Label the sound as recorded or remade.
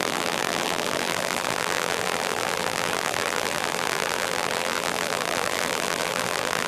remade